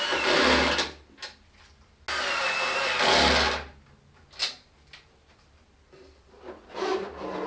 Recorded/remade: recorded